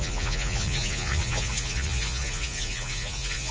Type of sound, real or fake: fake